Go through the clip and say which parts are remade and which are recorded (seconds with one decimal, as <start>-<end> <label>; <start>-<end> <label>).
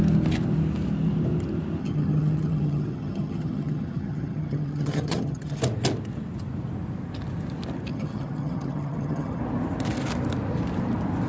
0.0-1.8 recorded; 1.8-5.6 remade; 5.6-7.9 recorded; 7.9-9.4 remade; 9.4-11.3 recorded